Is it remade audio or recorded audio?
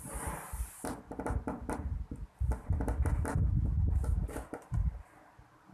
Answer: recorded